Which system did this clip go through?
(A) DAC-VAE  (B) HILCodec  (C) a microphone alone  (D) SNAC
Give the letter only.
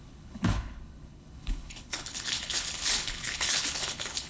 B